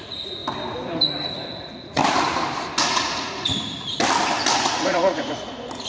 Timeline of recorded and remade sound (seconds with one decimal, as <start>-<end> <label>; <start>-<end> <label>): 0.0-0.4 remade; 0.4-1.3 recorded; 1.3-2.0 remade; 2.0-2.8 recorded; 2.8-3.5 remade; 3.5-4.5 recorded; 4.5-5.9 remade

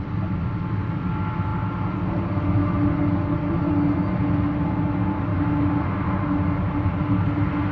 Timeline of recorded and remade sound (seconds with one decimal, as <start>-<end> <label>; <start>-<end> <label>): 0.0-7.7 recorded